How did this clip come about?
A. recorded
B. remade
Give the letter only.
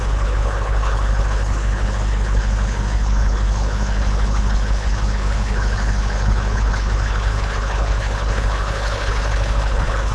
B